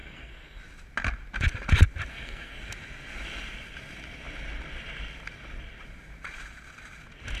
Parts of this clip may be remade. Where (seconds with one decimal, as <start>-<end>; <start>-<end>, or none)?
0.0-0.6; 2.1-2.6